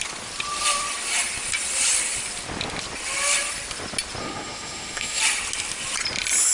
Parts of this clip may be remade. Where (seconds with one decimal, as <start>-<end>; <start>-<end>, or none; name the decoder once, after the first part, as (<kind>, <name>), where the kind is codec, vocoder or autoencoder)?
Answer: 4.2-5.2 (codec, SNAC)